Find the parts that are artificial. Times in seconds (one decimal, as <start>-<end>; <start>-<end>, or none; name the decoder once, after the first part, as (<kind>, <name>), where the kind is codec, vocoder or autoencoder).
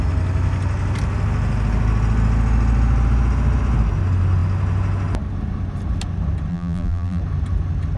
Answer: 6.5-7.2 (vocoder, BigVGAN v2)